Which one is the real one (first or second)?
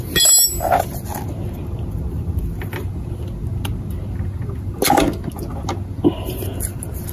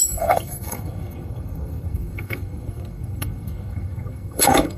first